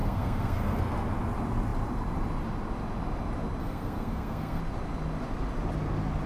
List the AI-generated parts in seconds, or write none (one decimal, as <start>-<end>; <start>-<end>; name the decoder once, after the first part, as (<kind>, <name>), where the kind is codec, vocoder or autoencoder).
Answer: 0.0-0.8 (codec, SNAC); 3.6-4.6